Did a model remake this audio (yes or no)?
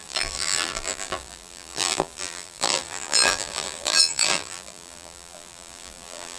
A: yes